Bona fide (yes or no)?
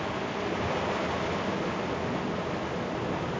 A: yes